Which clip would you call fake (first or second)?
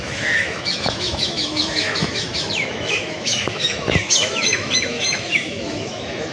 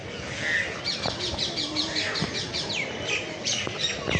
first